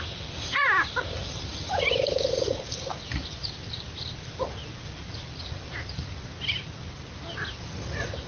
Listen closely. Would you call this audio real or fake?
real